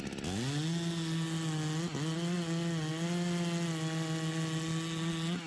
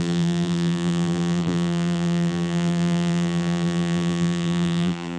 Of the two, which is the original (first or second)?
first